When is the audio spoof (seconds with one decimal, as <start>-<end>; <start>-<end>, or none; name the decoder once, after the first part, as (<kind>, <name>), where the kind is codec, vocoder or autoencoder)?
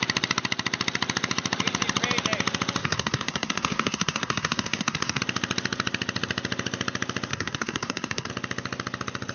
2.8-5.2 (codec, SNAC); 7.3-8.3